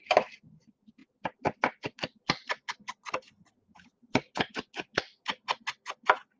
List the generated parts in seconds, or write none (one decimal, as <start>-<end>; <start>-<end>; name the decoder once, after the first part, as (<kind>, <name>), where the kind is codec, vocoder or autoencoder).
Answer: none